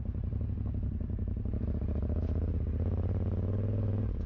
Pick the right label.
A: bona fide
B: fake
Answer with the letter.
B